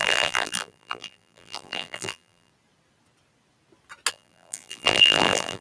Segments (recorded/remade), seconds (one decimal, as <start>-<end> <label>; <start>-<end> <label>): 0.0-2.5 remade; 2.5-4.1 recorded; 4.1-5.6 remade